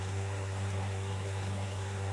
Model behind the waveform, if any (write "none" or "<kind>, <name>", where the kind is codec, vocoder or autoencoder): codec, SNAC